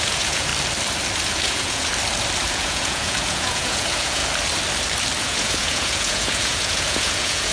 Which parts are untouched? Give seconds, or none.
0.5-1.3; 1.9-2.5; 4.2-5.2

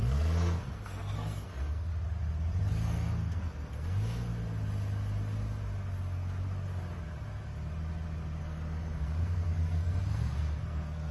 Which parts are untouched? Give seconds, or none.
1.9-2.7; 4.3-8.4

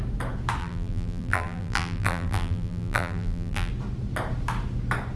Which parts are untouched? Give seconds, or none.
0.0-0.6; 3.7-5.2

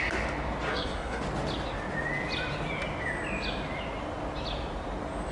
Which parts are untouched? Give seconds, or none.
0.0-0.7; 1.2-5.3

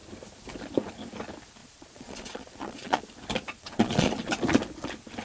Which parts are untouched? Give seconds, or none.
0.0-1.6; 3.0-3.5; 4.1-5.2

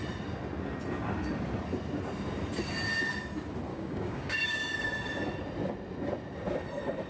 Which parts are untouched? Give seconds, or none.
0.0-3.7; 4.9-7.1